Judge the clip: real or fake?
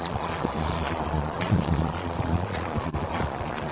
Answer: fake